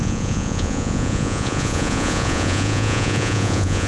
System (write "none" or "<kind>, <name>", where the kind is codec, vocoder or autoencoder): vocoder, Vocos